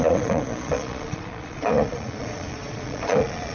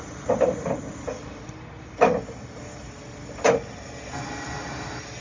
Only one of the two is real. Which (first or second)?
second